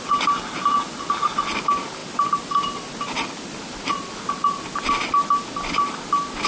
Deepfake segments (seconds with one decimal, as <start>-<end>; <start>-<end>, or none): none